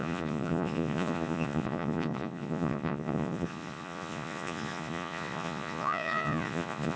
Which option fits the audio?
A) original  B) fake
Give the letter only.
B